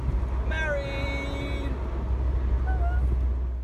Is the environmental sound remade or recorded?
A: recorded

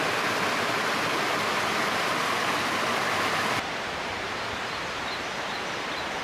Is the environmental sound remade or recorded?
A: recorded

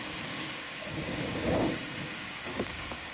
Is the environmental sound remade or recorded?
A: remade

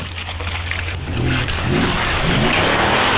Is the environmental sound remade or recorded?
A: remade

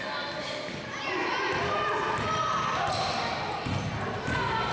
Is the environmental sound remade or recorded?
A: recorded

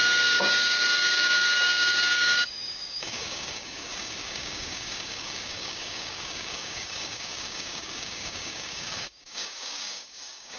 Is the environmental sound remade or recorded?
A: remade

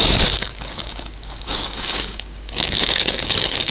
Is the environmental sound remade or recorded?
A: remade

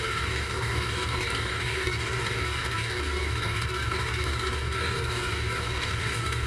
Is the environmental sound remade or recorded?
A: remade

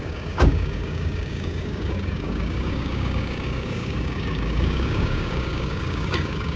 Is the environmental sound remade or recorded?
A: remade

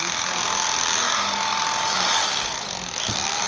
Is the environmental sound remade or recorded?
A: remade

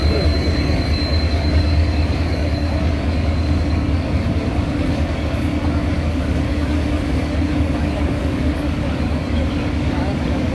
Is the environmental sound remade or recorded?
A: remade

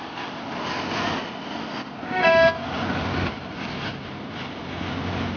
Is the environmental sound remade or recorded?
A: recorded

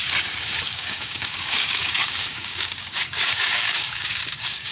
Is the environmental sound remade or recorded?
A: remade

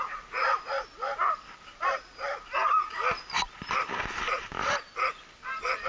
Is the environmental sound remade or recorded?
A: recorded